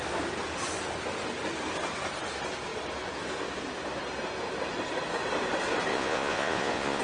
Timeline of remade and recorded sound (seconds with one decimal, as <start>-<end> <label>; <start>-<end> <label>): 0.0-5.9 recorded; 5.9-7.0 remade